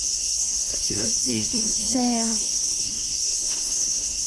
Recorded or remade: remade